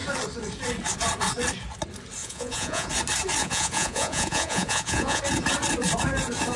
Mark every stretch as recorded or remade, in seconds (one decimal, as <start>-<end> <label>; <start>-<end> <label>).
0.0-2.2 recorded; 2.2-2.9 remade; 2.9-3.4 recorded; 3.4-5.2 remade; 5.2-6.6 recorded